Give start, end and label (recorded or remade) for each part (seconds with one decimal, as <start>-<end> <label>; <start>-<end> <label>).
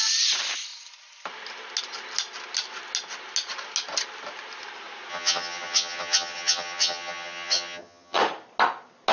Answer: 0.0-5.1 recorded; 5.1-8.2 remade; 8.2-9.1 recorded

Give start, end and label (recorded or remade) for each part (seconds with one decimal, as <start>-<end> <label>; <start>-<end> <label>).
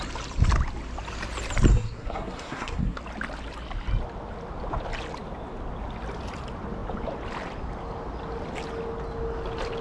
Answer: 0.0-1.7 recorded; 1.7-3.0 remade; 3.0-9.8 recorded